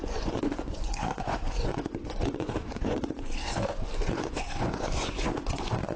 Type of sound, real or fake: fake